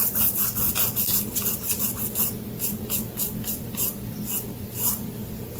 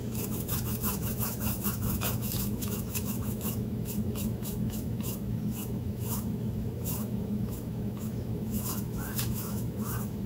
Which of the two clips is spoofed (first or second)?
second